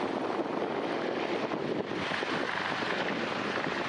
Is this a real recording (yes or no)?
no